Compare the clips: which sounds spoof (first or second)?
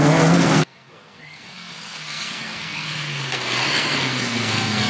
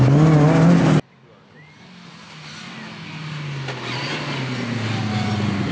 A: first